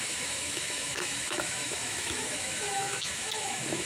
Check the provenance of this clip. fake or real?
fake